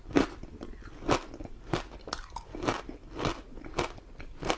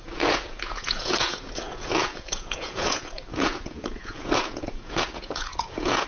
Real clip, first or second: first